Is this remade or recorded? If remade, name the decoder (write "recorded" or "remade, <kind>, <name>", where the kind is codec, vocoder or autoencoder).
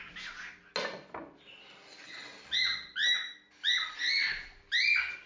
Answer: recorded